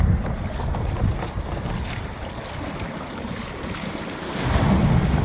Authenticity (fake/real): real